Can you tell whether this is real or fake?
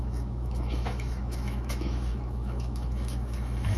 fake